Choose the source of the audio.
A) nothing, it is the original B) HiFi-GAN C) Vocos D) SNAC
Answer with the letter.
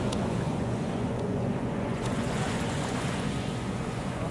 C